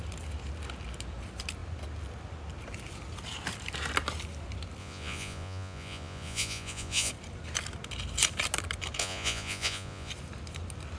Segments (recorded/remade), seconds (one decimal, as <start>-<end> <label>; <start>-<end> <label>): 0.0-4.8 recorded; 4.8-7.1 remade; 7.1-9.0 recorded; 9.0-10.1 remade; 10.1-11.0 recorded